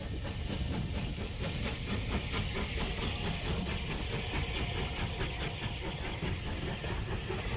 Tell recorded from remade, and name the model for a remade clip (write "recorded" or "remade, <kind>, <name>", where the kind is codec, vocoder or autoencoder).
recorded